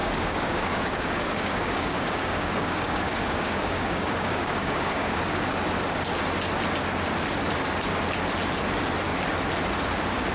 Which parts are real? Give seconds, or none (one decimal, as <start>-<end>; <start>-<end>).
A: 5.2-10.3